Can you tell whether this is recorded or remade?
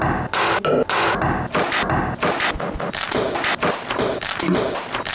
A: recorded